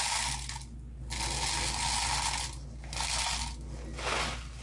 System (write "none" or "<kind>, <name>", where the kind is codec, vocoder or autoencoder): none